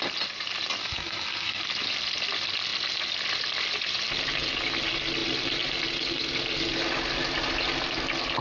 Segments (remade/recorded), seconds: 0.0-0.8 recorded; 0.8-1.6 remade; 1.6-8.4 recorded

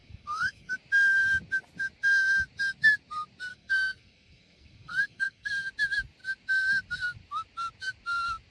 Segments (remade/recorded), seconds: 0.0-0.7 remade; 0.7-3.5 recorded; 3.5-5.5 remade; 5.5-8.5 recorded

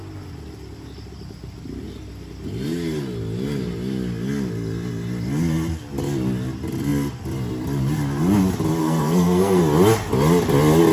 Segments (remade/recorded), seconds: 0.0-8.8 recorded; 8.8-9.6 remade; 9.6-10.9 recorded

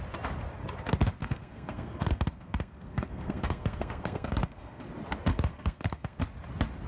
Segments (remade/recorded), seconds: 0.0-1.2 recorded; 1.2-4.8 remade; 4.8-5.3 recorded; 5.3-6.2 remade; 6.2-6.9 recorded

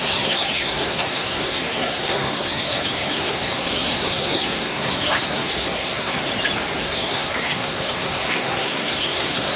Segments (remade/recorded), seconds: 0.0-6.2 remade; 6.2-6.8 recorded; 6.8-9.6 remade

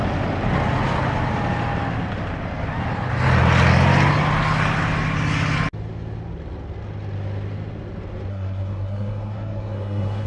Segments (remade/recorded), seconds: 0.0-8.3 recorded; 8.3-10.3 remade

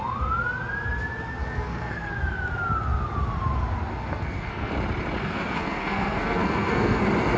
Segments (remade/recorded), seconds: 0.0-1.4 recorded; 1.4-2.1 remade; 2.1-3.9 recorded; 3.9-4.7 remade; 4.7-5.2 recorded; 5.2-7.0 remade; 7.0-7.4 recorded

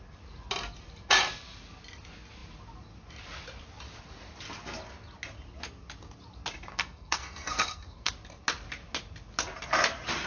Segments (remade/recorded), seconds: 0.0-6.7 recorded; 6.7-8.1 remade; 8.1-10.3 recorded